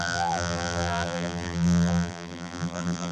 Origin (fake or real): fake